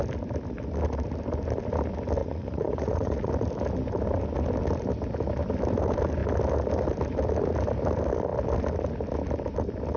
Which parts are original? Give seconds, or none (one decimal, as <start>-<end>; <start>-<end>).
0.0-2.2; 3.3-10.0